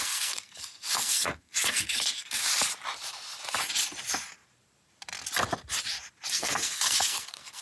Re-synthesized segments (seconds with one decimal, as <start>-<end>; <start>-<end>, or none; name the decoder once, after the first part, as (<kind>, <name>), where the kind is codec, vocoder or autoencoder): 0.0-2.4 (codec, SNAC); 6.3-7.6